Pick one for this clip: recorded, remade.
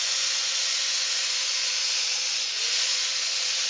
remade